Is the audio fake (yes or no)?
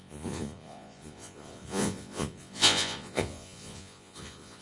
yes